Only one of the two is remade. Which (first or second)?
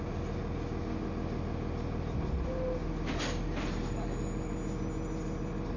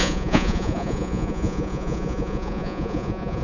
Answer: second